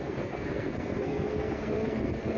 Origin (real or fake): fake